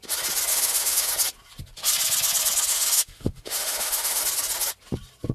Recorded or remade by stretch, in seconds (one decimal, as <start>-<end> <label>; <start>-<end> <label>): 0.0-0.5 recorded; 0.5-1.1 remade; 1.1-2.7 recorded; 2.7-4.2 remade; 4.2-5.3 recorded